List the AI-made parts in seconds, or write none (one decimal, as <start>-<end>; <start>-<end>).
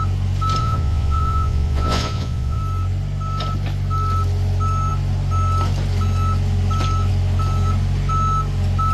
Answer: 0.6-2.6